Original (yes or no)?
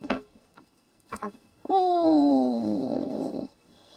no